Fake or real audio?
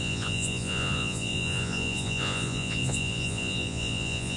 fake